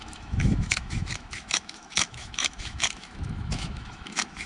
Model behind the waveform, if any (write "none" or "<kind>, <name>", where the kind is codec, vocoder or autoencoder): autoencoder, DAC-VAE